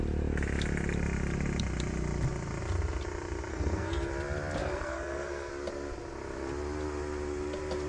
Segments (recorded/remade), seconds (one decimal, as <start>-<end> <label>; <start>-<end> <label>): 0.0-3.5 recorded; 3.5-4.1 remade; 4.1-4.6 recorded; 4.6-5.5 remade; 5.5-7.9 recorded